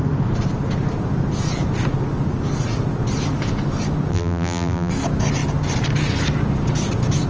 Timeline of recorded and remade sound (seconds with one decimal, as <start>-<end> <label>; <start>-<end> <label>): 0.0-4.1 recorded; 4.1-4.9 remade; 4.9-7.3 recorded